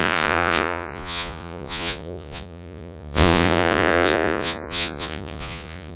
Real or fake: fake